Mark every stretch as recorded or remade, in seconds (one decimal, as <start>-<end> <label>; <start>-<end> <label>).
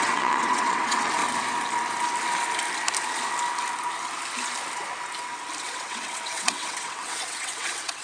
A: 0.0-1.2 remade; 1.2-5.6 recorded; 5.6-8.0 remade